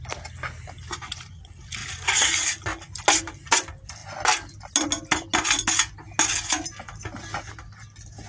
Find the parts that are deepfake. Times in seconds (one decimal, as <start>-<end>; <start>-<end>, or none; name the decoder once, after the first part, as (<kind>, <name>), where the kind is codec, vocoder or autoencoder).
none